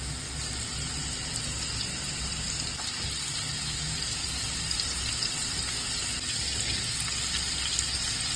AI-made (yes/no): no